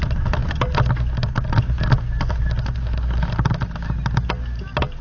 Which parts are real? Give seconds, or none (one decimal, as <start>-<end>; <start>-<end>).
0.0-5.0